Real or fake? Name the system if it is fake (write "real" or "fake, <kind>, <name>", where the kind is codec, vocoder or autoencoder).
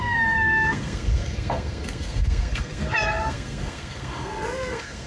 fake, codec, SNAC